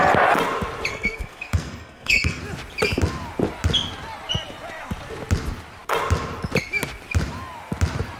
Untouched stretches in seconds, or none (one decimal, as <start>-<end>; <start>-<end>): 0.0-0.9; 2.4-8.2